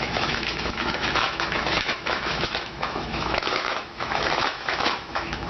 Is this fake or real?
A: fake